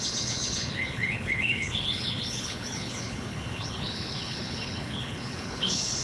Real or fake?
fake